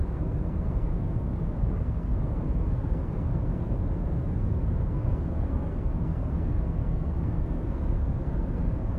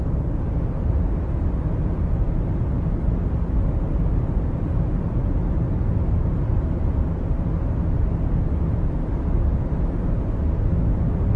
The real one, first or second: second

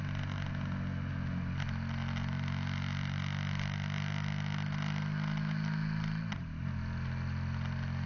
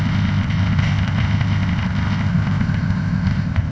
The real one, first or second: first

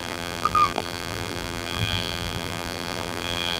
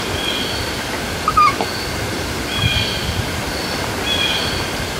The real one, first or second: second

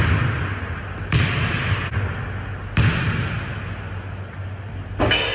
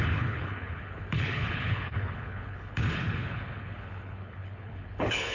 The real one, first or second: first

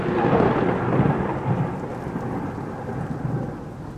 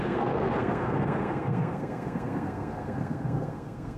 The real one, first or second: first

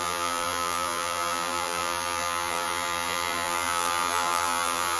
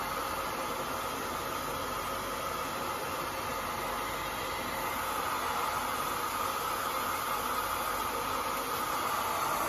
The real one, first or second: second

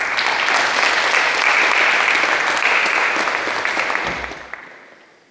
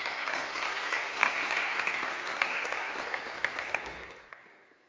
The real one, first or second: first